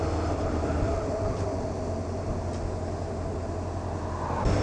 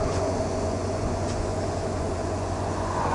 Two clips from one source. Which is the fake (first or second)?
second